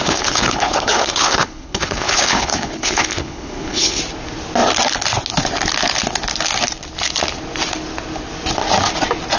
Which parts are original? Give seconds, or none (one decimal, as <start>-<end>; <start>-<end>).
4.0-9.4